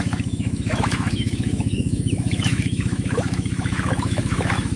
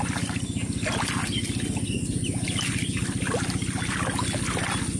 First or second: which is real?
second